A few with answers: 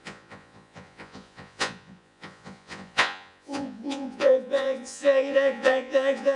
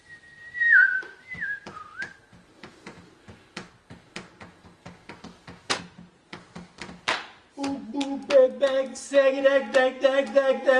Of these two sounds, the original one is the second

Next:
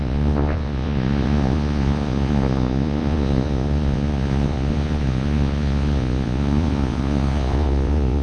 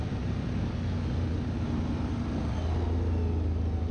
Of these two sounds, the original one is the second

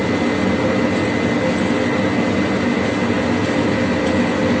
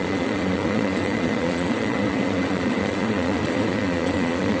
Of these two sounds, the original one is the first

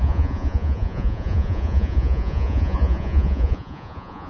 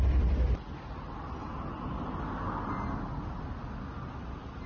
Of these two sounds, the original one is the second